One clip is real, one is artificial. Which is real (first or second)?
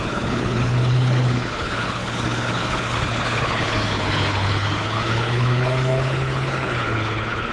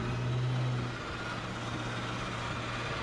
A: second